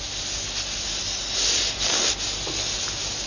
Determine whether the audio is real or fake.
real